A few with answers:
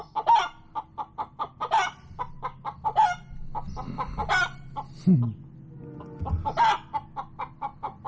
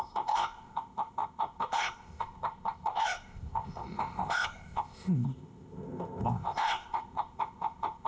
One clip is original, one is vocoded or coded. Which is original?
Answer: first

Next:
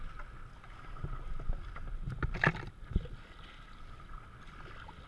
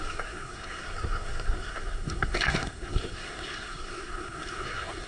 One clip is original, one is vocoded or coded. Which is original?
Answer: first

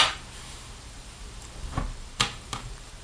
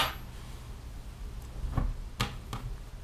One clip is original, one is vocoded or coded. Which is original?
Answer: second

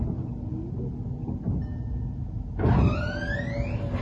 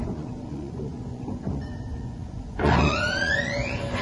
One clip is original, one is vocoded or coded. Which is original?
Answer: first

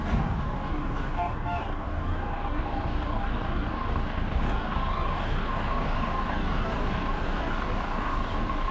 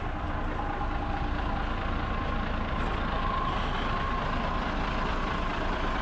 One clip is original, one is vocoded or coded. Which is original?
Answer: second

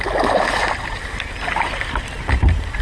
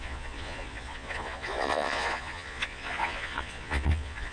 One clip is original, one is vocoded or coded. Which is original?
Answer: first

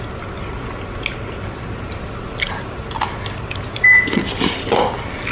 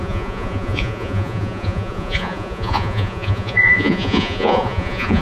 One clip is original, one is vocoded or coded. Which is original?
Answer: first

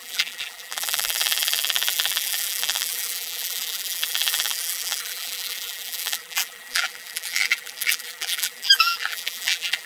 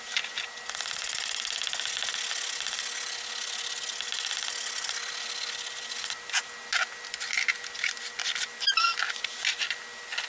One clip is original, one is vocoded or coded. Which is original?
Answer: second